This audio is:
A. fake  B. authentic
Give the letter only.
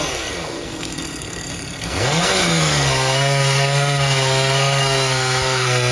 A